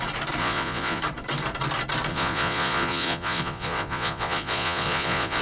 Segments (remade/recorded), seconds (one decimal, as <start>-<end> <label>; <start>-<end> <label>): 0.0-0.4 recorded; 0.4-1.0 remade; 1.0-2.1 recorded; 2.1-5.4 remade